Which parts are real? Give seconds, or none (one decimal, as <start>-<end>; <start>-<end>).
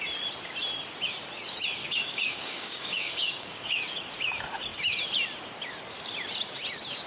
0.0-1.8; 3.8-7.1